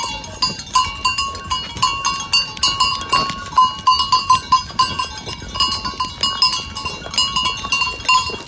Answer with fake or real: real